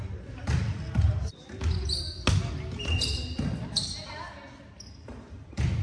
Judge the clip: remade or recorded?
recorded